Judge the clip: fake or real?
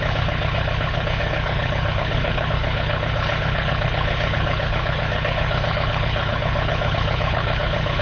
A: fake